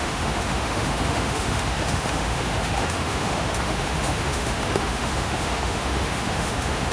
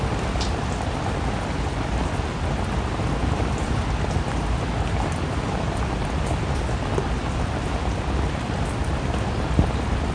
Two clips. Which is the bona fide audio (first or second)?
second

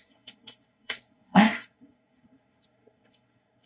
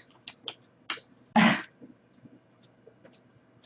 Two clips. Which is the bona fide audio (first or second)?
second